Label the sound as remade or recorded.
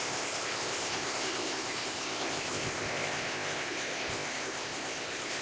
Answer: remade